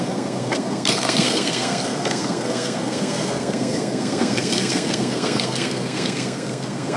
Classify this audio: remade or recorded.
remade